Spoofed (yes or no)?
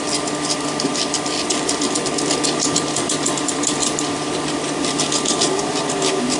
no